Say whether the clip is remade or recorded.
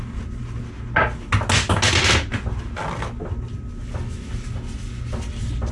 recorded